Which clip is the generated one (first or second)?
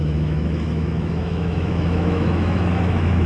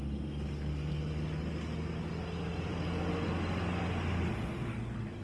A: first